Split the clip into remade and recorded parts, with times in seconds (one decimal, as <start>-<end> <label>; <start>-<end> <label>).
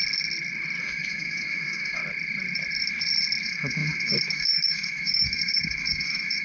0.0-0.8 recorded; 0.8-2.0 remade; 2.0-3.4 recorded; 3.4-6.4 remade